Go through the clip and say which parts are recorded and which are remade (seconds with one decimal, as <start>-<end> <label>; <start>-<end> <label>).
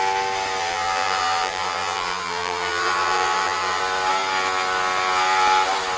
0.0-0.6 recorded; 0.6-3.8 remade; 3.8-6.0 recorded